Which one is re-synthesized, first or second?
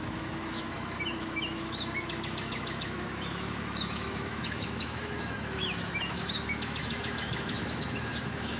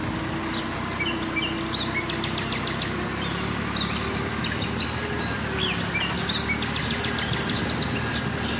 first